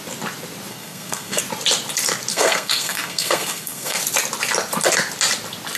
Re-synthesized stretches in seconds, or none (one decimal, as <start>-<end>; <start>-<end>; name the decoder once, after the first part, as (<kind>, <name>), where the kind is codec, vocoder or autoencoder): 0.7-1.4 (codec, SNAC); 2.3-4.0